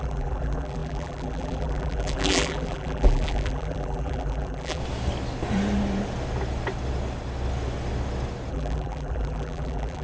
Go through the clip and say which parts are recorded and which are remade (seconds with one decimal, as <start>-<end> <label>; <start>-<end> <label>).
0.0-4.8 remade; 4.8-8.5 recorded; 8.5-10.0 remade